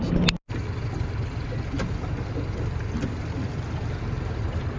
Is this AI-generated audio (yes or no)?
no